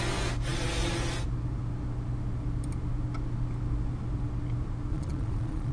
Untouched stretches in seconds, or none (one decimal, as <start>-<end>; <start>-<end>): 0.0-4.9